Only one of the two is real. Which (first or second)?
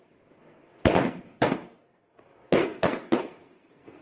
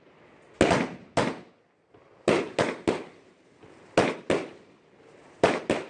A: second